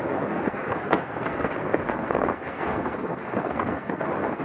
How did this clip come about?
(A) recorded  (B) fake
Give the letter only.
B